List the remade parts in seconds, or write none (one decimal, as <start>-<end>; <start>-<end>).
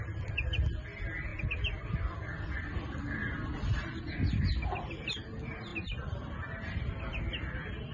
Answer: 3.2-4.0; 5.7-7.9